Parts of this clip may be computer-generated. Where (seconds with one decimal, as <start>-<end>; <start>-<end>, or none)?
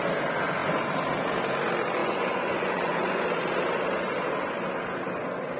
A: 2.0-3.2